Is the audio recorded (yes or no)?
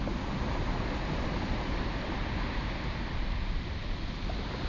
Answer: yes